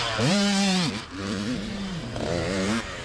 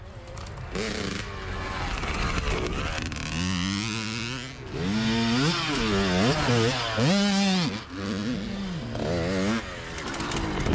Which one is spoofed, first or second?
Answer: first